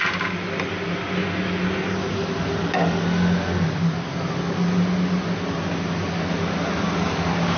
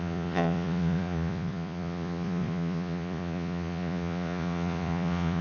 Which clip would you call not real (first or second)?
second